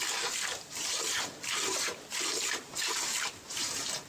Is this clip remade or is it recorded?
remade